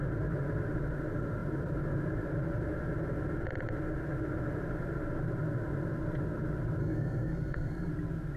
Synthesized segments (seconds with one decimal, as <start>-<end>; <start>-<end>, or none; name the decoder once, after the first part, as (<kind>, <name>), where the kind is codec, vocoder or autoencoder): 6.8-7.9 (codec, SNAC)